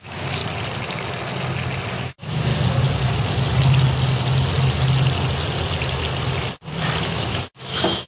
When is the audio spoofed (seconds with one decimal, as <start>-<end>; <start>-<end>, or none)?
0.0-0.4; 1.9-2.5; 7.0-8.1